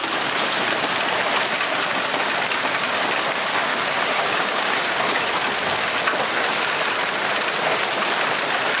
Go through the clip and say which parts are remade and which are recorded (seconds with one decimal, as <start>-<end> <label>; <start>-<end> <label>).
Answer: 0.0-3.7 recorded; 3.7-5.2 remade; 5.2-8.8 recorded